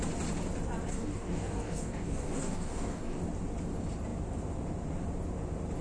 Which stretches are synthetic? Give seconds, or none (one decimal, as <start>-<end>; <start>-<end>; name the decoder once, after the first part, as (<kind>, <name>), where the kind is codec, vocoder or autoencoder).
0.9-3.2 (codec, DAC)